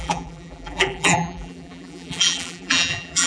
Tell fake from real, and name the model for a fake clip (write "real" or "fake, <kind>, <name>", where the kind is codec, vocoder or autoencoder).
fake, vocoder, BigVGAN v2